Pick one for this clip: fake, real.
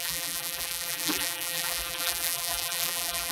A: fake